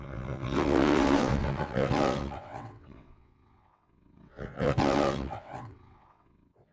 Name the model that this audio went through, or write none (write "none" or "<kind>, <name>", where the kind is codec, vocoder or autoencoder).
vocoder, WaveNeXt